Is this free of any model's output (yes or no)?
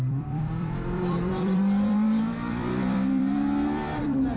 no